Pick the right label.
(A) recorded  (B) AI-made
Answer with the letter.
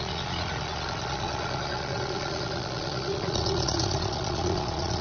B